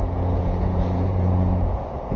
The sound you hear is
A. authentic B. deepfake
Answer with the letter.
B